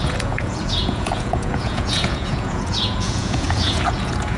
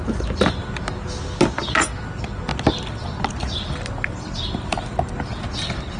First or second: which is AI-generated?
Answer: first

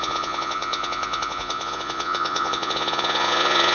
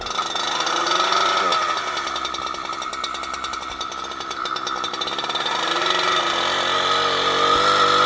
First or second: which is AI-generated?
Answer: first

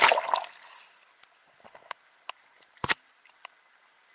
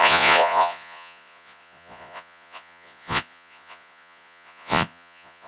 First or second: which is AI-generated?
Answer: second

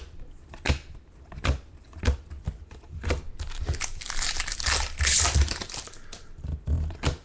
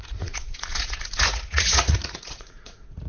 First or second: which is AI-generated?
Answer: second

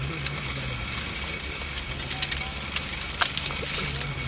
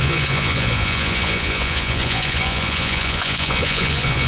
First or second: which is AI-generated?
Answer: second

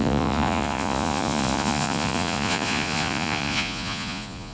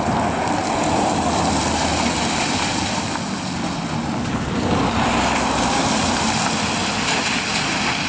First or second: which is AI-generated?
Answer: first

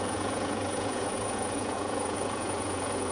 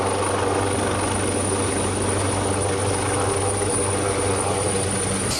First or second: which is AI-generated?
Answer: first